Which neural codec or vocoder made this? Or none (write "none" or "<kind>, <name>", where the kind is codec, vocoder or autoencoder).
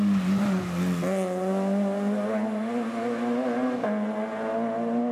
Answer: none